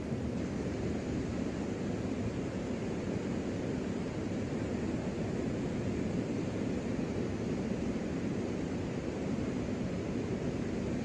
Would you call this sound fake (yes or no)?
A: no